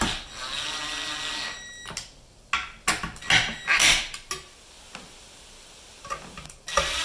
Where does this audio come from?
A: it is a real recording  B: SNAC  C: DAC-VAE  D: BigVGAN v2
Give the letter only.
A